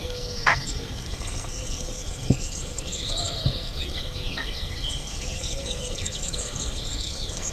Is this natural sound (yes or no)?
no